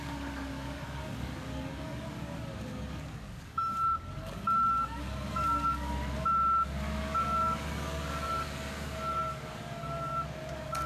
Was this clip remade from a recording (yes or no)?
yes